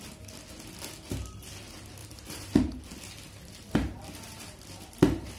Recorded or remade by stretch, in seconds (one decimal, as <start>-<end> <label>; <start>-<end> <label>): 0.0-2.0 recorded; 2.0-2.8 remade; 2.8-5.4 recorded